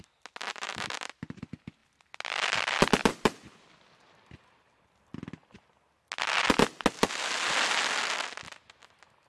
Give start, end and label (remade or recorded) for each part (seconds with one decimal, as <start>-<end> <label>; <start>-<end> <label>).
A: 0.0-9.3 recorded